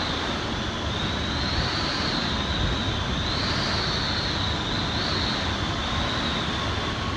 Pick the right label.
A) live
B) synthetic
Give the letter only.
A